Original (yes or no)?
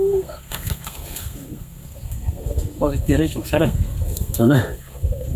no